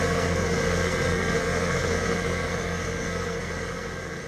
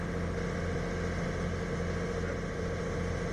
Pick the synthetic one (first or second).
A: first